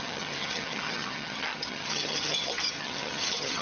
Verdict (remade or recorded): remade